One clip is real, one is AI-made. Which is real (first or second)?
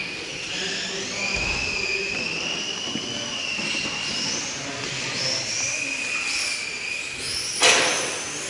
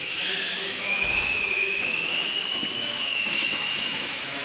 first